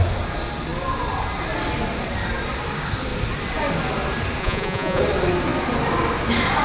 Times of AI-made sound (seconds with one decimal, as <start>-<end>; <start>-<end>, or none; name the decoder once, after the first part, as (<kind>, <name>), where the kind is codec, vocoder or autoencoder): 4.4-5.0 (vocoder, Vocos)